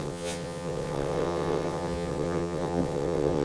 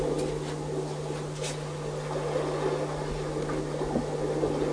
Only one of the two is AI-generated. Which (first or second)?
first